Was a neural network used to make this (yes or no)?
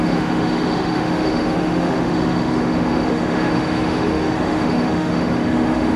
yes